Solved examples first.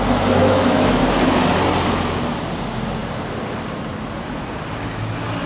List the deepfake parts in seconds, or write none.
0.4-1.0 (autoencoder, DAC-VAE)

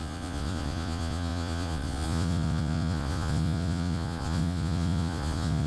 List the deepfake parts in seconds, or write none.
0.0-5.7 (vocoder, Vocos)

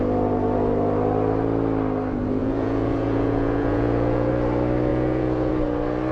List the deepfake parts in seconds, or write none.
2.4-4.3 (vocoder, Vocos); 4.9-5.5

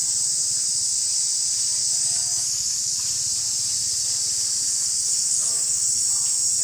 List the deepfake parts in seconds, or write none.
1.8-2.8 (codec, DAC); 4.8-6.0

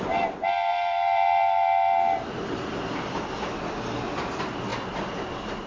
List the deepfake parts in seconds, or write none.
0.7-2.6 (vocoder, BigVGAN v2)

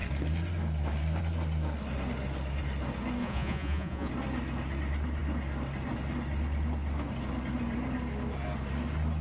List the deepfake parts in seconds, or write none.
3.2-4.1 (vocoder, Vocos)

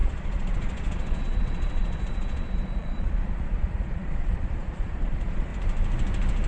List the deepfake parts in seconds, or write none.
0.0-5.5 (vocoder, Vocos)

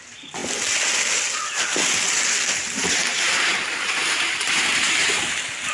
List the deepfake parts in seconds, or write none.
0.0-0.4 (vocoder, BigVGAN v2); 2.9-5.7